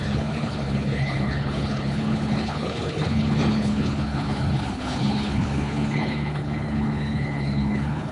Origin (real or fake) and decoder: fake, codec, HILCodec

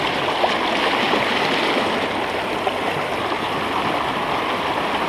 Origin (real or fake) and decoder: real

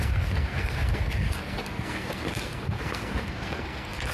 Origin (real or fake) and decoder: fake, codec, SNAC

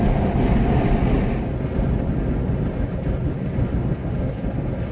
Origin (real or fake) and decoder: real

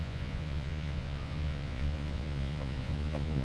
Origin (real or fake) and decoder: fake, vocoder, Vocos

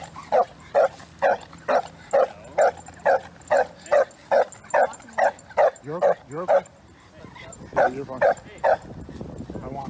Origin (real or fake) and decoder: real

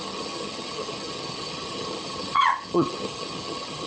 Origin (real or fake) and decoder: fake, vocoder, HiFi-GAN